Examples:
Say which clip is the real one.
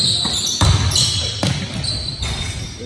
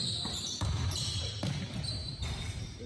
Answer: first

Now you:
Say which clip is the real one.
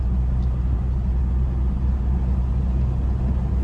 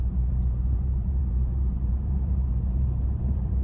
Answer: first